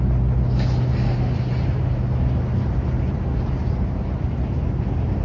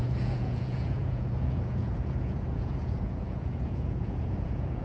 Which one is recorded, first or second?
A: first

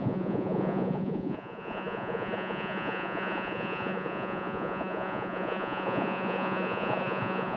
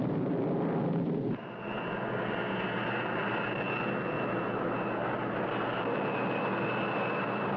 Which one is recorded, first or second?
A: second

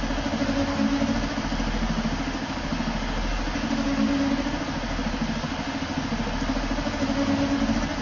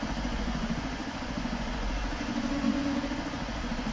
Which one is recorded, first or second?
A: first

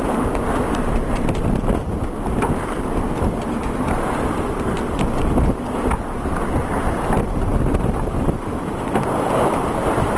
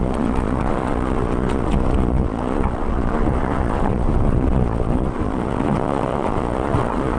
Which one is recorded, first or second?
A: first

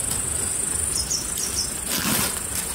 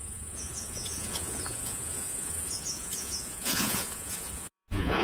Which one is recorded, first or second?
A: first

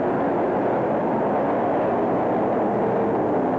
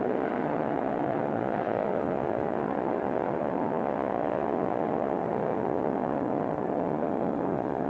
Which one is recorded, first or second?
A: first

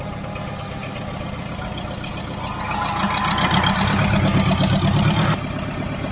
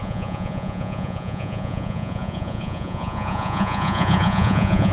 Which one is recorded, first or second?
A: first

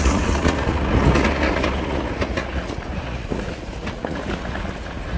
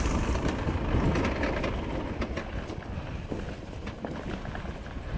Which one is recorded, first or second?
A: second